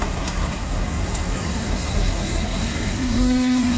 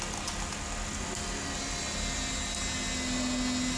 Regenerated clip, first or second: first